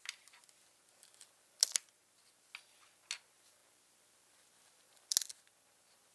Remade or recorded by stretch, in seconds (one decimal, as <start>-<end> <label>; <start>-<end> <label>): 0.0-6.1 recorded